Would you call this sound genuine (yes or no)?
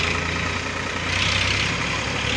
yes